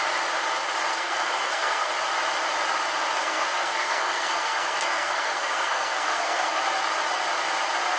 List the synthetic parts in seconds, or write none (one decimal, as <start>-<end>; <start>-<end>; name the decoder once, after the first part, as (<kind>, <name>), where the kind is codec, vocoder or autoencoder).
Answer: 0.9-1.9 (codec, SNAC); 3.2-6.6